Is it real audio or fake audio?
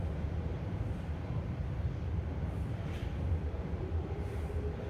fake